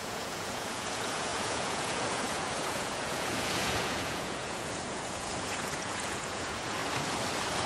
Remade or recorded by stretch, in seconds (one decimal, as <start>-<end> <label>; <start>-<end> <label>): 0.0-6.8 remade; 6.8-7.7 recorded